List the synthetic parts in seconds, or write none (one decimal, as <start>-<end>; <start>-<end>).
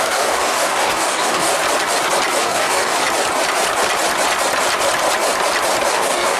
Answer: 0.0-1.5; 2.4-3.0; 5.9-6.4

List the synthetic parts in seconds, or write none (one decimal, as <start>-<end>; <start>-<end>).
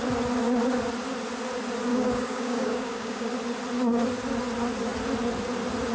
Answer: 1.9-3.3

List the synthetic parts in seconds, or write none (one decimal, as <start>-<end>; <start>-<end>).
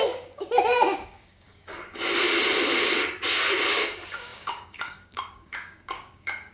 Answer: 0.0-2.2; 3.7-6.5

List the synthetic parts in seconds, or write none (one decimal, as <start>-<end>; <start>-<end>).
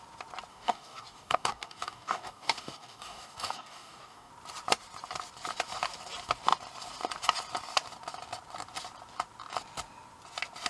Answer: 0.5-4.3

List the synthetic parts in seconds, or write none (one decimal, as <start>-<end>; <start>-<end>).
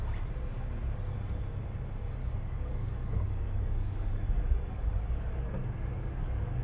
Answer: 2.2-6.6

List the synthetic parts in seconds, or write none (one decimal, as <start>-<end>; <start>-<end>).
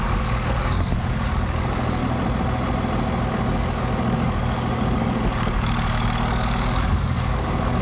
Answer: 0.0-2.0; 3.3-7.8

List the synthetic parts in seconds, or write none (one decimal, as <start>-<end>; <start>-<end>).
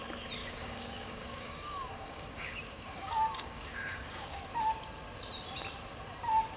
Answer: 0.4-4.4